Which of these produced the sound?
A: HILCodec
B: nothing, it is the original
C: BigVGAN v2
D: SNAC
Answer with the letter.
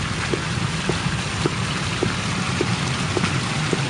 B